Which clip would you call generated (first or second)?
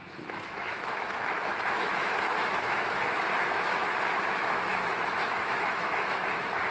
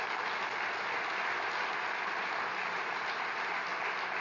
first